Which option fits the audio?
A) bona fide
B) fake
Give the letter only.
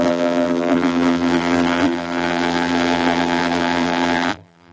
B